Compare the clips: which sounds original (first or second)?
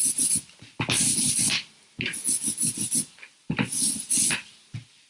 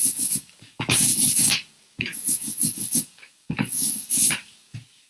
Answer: first